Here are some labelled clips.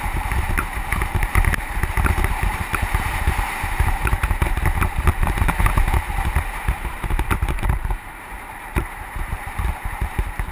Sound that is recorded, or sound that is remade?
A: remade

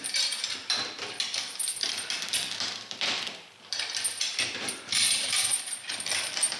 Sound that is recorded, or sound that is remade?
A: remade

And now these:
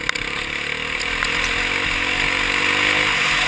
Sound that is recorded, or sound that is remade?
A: recorded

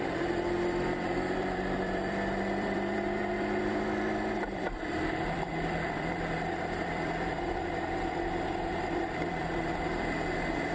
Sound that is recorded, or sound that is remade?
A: remade